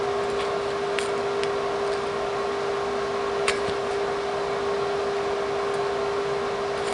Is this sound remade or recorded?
recorded